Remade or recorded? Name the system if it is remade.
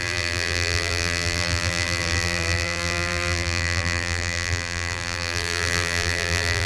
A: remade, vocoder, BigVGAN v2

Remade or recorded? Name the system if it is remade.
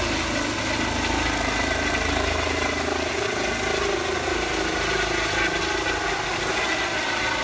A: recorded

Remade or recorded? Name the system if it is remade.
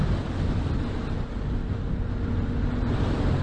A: recorded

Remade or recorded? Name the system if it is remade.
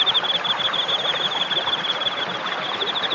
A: recorded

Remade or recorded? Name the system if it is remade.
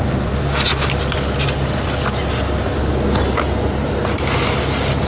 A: recorded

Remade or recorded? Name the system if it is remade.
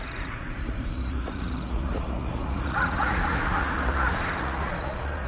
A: remade, vocoder, Vocos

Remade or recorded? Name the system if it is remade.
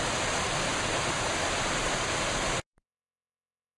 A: recorded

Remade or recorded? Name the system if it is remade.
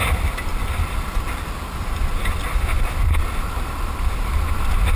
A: remade, vocoder, BigVGAN v2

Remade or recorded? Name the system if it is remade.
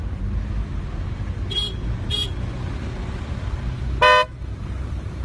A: recorded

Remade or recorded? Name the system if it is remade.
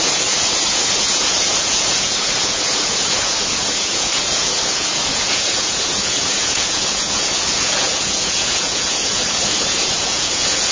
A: remade, vocoder, Vocos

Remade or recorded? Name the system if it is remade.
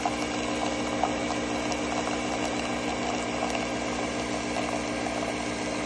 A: recorded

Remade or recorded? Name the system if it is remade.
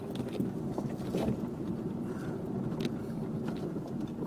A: recorded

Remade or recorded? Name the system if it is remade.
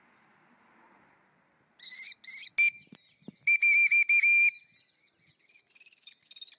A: recorded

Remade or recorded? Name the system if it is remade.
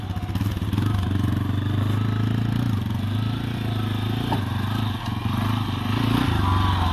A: recorded